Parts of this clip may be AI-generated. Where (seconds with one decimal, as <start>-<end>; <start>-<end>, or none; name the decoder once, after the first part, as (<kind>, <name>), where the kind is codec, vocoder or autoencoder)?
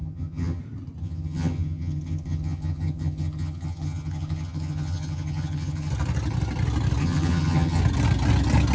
0.0-0.6 (vocoder, HiFi-GAN); 1.0-5.9; 7.0-7.8